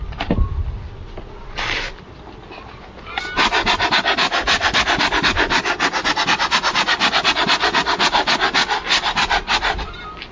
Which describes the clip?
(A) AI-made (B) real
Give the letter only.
B